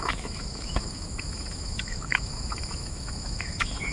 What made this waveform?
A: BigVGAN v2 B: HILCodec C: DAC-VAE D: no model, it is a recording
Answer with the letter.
C